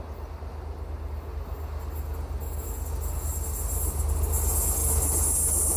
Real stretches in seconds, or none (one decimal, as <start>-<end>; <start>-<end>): 0.0-3.3; 4.1-5.8